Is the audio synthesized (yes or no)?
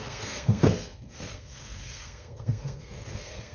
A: yes